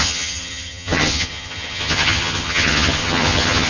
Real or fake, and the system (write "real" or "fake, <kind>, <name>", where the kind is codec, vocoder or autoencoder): fake, vocoder, HiFi-GAN